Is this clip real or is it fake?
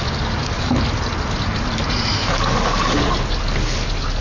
real